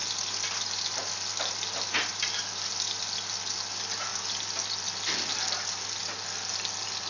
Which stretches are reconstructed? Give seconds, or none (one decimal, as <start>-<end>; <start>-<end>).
none